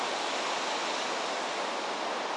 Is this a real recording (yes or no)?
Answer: yes